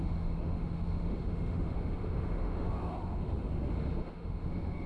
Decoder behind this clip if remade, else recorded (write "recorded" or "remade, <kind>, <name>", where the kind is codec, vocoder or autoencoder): remade, autoencoder, DAC-VAE